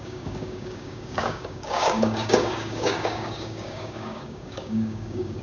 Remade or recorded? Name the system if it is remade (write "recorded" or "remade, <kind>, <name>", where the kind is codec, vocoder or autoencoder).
remade, codec, DAC